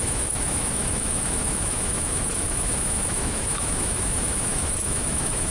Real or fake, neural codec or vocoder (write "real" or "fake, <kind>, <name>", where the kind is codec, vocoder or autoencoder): fake, autoencoder, DAC-VAE